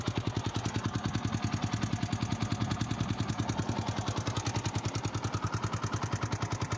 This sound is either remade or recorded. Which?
recorded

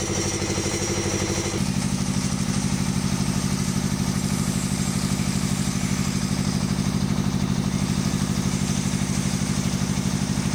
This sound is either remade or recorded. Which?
remade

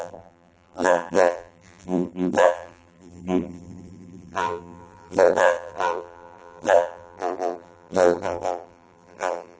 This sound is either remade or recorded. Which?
remade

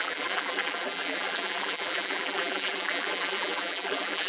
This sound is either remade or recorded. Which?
remade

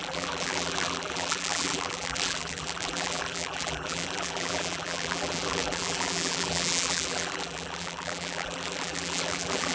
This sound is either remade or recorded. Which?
remade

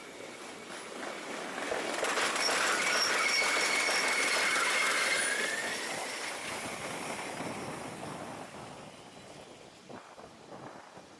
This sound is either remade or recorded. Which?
recorded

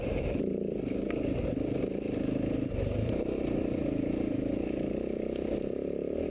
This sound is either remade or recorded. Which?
recorded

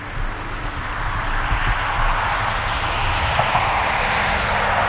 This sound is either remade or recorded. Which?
recorded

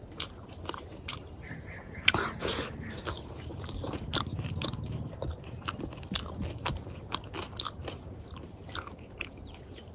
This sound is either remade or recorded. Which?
remade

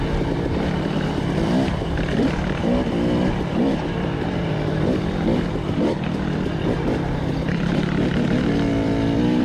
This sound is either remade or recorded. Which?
remade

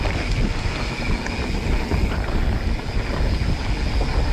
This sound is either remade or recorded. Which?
recorded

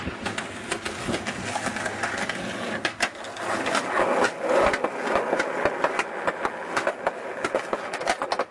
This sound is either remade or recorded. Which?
recorded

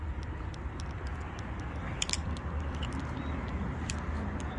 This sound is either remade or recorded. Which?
recorded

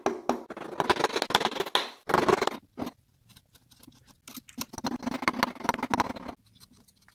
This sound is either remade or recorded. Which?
recorded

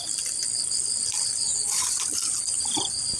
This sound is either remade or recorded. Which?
recorded